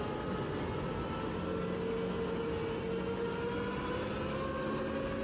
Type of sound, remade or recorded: recorded